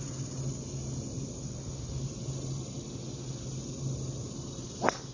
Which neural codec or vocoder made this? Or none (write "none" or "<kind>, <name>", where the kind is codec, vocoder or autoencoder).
none